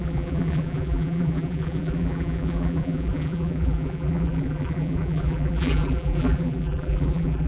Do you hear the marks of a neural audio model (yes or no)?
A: yes